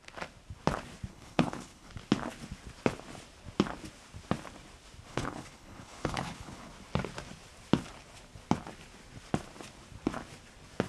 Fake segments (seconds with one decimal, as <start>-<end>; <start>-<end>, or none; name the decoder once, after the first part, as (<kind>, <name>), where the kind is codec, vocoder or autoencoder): 1.1-1.9 (codec, HILCodec); 5.1-6.7